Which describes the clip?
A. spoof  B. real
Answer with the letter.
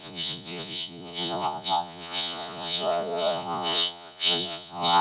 A